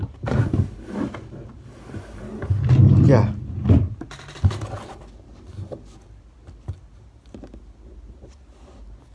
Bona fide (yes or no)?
yes